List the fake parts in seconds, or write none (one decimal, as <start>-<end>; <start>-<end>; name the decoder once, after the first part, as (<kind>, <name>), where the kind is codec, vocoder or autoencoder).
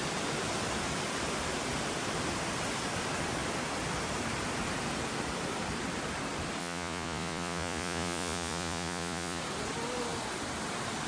6.6-9.4 (vocoder, Vocos)